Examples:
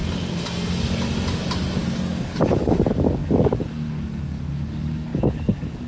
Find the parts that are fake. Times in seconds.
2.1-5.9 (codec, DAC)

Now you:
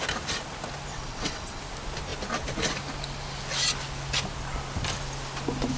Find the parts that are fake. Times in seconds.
0.9-1.6 (vocoder, WaveNeXt)

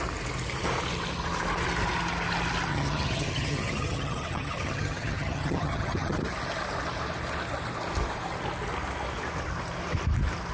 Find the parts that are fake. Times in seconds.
2.7-6.2 (vocoder, HiFi-GAN)